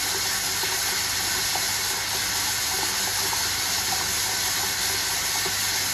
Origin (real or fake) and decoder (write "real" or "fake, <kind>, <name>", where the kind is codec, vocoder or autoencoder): real